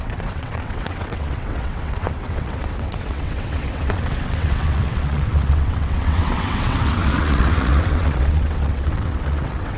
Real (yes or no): no